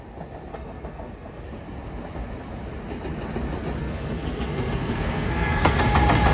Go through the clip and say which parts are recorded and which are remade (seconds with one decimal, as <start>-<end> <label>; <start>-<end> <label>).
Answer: 0.0-0.5 recorded; 0.5-1.4 remade; 1.4-3.8 recorded; 3.8-5.8 remade; 5.8-6.3 recorded